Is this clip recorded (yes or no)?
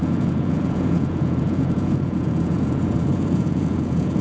no